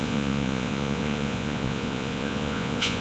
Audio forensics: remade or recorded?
remade